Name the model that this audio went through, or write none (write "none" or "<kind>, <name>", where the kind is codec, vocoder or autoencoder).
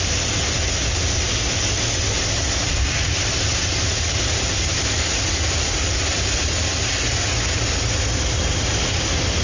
none